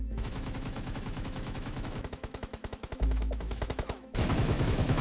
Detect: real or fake fake